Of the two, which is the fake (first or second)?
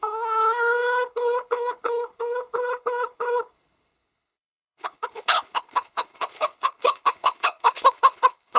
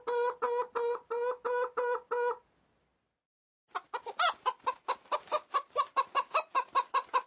first